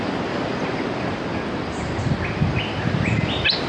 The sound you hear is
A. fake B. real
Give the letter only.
B